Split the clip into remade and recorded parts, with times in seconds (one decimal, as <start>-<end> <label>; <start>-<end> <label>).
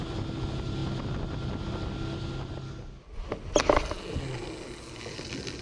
0.0-5.6 recorded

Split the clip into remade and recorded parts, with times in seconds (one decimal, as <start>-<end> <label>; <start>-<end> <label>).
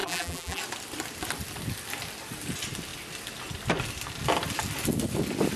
0.0-0.6 remade; 0.6-5.6 recorded